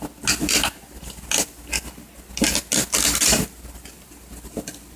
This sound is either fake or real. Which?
real